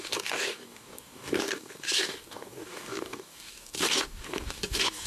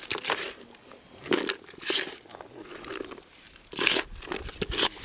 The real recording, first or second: second